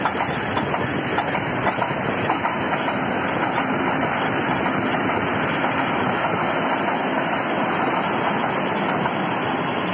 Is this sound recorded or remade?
recorded